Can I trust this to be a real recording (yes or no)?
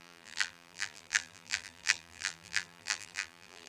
no